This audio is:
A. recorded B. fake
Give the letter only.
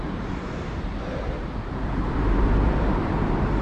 B